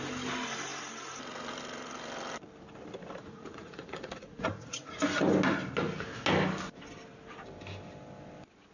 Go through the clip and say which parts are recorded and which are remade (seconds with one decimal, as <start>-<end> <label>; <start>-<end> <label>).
0.0-3.2 recorded; 3.2-5.0 remade; 5.0-8.7 recorded